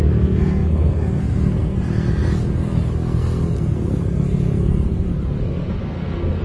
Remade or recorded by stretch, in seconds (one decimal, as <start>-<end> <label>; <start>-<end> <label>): 0.0-6.4 remade